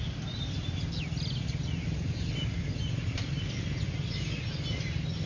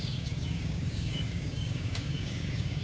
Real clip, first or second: first